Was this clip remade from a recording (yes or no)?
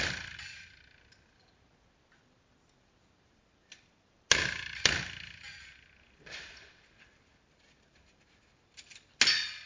no